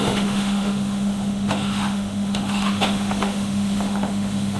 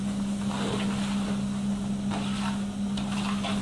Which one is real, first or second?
second